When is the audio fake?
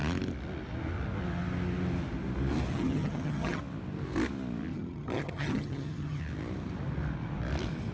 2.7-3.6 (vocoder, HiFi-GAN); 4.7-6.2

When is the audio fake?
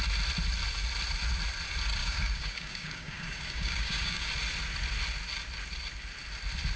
2.0-4.3 (codec, DAC)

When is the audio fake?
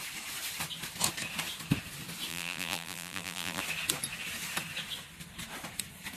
2.3-3.6 (vocoder, BigVGAN v2)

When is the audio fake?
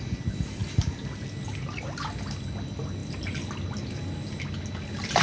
none